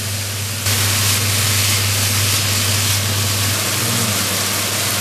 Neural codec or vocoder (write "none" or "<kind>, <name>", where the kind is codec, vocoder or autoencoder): none